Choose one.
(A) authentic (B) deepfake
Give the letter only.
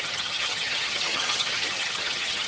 B